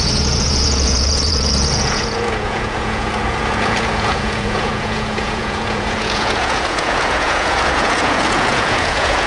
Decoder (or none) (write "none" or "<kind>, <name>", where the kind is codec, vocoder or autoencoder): vocoder, Vocos